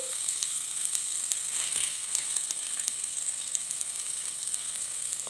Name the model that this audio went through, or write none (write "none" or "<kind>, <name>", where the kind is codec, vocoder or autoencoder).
codec, SNAC